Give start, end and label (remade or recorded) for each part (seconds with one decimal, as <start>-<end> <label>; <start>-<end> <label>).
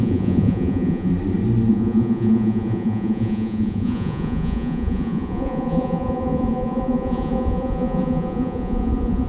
0.0-1.1 remade; 1.1-1.7 recorded; 1.7-9.3 remade